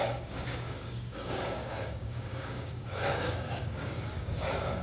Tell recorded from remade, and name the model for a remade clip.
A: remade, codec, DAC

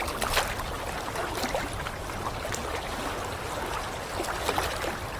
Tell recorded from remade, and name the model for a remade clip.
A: recorded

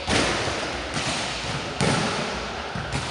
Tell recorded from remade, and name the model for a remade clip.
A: recorded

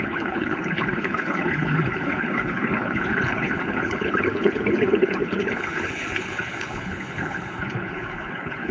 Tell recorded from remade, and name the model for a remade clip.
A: remade, codec, HILCodec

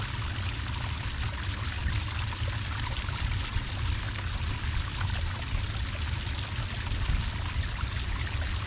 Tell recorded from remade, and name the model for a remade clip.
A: recorded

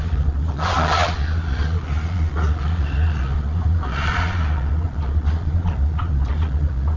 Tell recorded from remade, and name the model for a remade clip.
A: remade, vocoder, Vocos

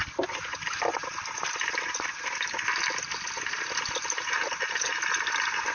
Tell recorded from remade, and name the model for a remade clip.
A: remade, vocoder, BigVGAN v2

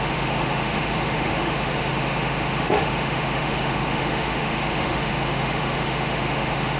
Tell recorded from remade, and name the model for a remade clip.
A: remade, autoencoder, DAC-VAE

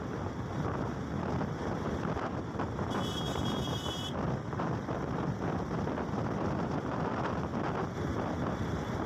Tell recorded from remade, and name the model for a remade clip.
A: recorded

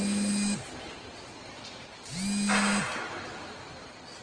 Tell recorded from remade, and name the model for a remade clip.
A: recorded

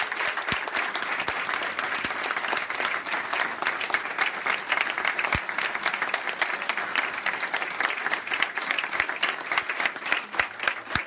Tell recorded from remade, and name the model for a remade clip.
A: recorded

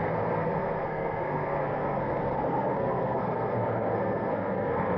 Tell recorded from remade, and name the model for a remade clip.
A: remade, codec, SNAC